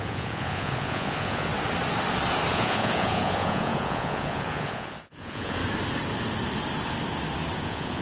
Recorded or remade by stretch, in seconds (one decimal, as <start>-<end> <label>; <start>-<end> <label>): 0.0-1.5 remade; 1.5-2.5 recorded; 2.5-5.6 remade; 5.6-7.6 recorded; 7.6-8.0 remade

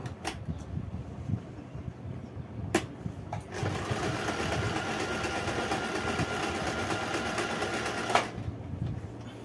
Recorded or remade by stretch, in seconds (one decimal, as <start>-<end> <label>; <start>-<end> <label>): 0.0-9.4 recorded

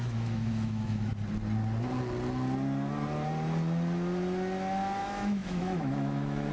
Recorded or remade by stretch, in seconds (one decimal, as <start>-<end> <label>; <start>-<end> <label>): 0.0-1.1 remade; 1.1-5.0 recorded; 5.0-6.5 remade